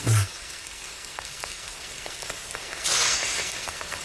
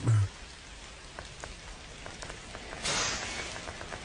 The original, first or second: second